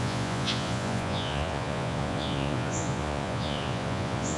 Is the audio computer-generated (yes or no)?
yes